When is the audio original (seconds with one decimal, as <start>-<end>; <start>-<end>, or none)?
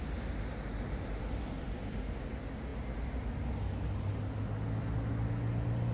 0.0-5.9